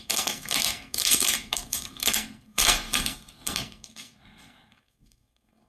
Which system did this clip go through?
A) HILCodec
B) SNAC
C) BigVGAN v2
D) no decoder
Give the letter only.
B